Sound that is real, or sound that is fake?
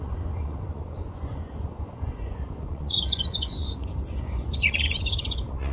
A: fake